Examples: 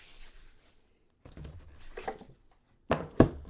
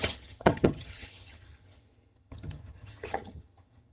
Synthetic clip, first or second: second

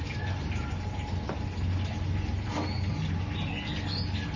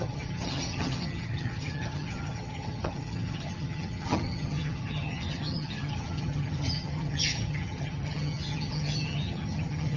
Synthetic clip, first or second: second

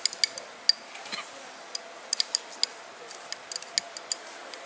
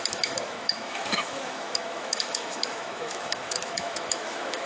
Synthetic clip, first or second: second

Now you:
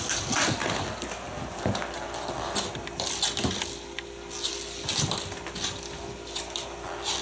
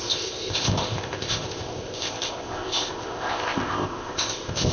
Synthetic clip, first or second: second